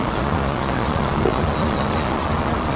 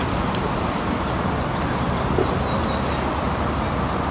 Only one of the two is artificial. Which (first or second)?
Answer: first